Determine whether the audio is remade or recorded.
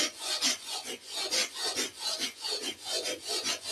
remade